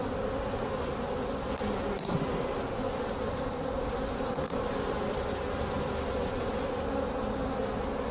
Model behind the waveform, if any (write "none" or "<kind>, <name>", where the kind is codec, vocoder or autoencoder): none